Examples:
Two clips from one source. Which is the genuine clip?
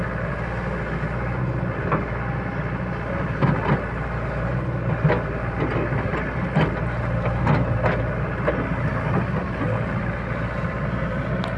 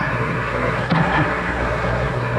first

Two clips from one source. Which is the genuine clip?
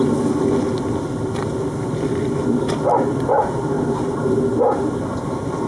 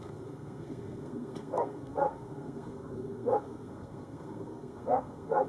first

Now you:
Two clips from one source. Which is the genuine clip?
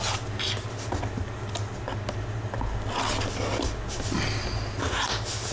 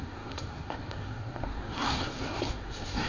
first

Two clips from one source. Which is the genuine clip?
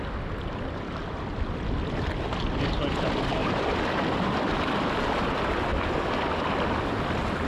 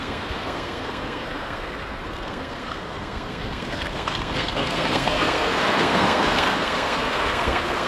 first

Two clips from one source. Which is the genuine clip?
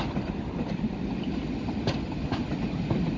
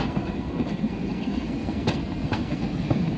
first